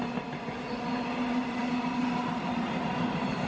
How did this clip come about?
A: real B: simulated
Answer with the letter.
A